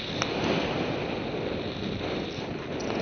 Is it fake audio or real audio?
real